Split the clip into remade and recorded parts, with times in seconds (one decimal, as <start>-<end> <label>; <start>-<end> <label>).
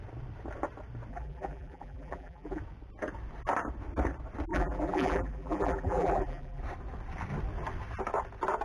0.0-1.1 recorded; 1.1-2.6 remade; 2.6-4.5 recorded; 4.5-6.6 remade; 6.6-8.6 recorded